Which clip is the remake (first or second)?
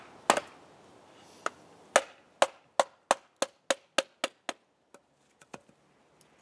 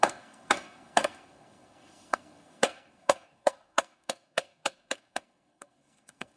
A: second